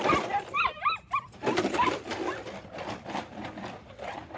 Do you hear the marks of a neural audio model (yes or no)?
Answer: yes